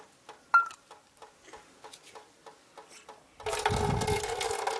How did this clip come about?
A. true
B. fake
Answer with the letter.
A